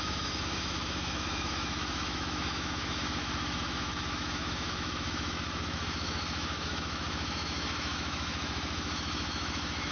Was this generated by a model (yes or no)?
yes